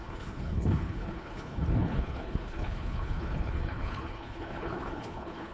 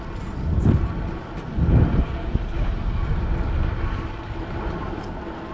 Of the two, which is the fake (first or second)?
first